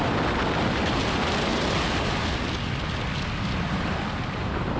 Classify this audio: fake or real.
real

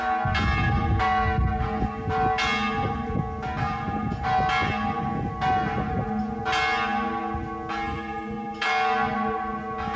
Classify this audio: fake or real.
real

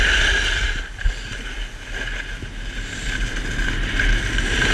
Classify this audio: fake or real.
real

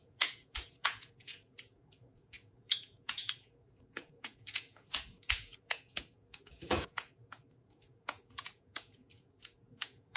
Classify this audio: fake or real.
fake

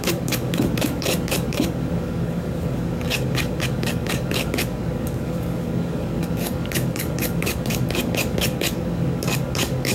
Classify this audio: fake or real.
fake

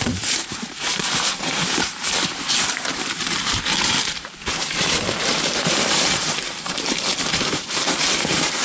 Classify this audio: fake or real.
fake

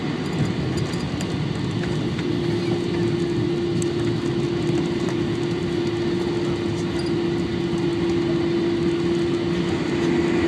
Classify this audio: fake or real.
real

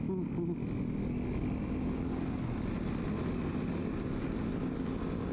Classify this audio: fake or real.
real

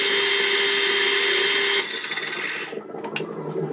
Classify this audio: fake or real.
real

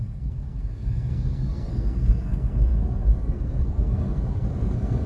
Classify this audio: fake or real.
fake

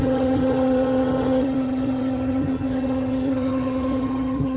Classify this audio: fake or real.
fake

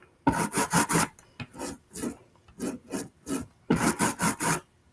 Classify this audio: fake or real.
real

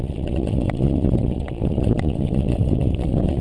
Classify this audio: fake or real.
fake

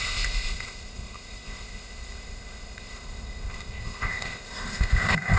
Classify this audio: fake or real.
fake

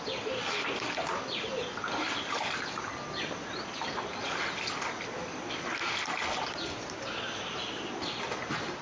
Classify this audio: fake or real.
real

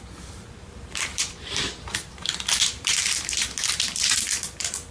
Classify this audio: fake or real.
fake